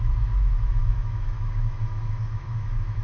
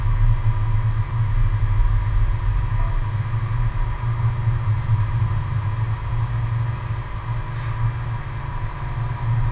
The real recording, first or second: second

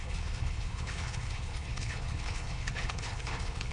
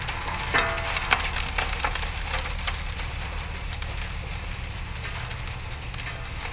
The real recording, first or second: second